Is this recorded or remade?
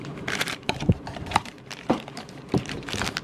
remade